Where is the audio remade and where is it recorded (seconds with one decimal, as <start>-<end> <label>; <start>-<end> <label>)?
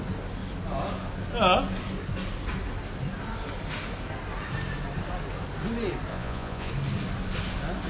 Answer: 0.0-6.1 recorded; 6.1-6.7 remade; 6.7-7.9 recorded